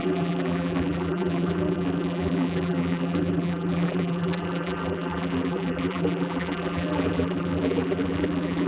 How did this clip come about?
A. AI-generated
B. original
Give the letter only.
A